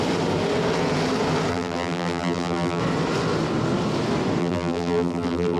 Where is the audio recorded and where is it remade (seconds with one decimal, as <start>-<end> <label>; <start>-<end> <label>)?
0.0-1.5 recorded; 1.5-2.8 remade; 2.8-4.4 recorded; 4.4-5.6 remade